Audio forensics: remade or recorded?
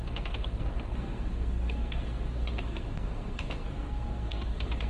remade